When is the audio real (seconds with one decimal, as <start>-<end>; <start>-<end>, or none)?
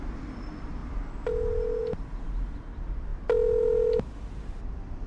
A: 0.0-5.1